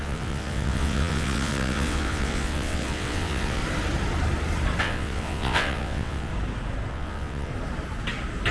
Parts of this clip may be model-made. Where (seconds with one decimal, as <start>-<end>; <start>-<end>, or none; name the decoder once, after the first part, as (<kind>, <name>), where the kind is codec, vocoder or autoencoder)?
0.0-3.6 (vocoder, WaveNeXt); 4.8-6.3; 6.9-7.5